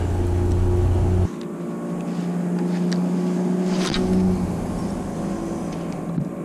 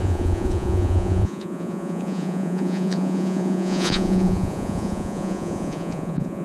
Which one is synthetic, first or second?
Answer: second